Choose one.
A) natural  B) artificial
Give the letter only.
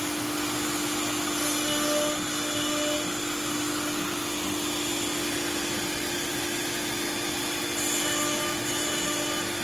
A